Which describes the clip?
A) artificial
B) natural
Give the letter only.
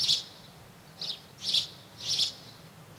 B